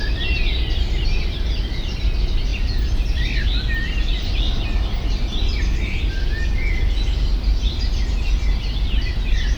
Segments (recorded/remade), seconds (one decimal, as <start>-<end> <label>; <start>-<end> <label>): 0.0-9.6 recorded